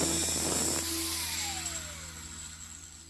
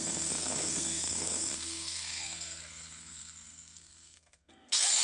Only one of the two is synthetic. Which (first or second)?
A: second